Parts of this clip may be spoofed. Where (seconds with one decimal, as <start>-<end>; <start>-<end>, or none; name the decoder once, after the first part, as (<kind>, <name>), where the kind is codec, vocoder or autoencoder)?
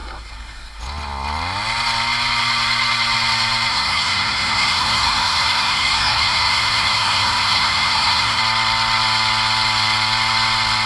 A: 0.0-0.8 (codec, SNAC); 3.7-8.4